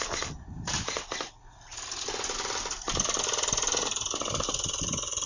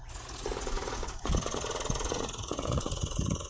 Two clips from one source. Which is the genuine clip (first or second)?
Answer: first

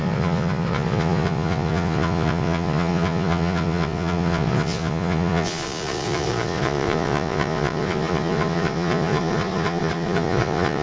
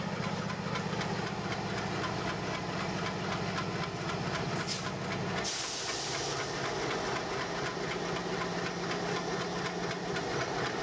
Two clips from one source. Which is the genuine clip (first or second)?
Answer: second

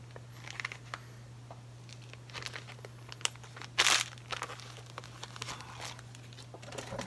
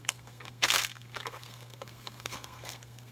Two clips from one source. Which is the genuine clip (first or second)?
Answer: first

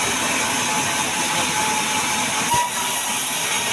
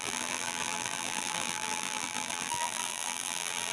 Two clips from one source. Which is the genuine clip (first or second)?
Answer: first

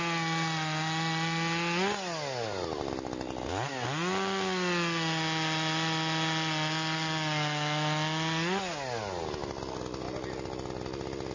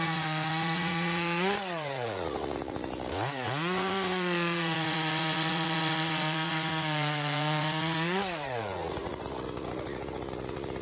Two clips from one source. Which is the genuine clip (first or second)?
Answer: first